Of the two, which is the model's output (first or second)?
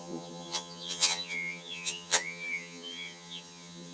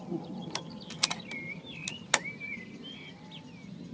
first